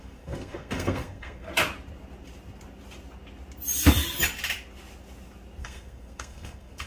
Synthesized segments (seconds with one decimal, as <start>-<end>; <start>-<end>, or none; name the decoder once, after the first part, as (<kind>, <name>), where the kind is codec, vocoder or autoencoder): 0.0-1.5 (codec, SNAC); 5.6-6.9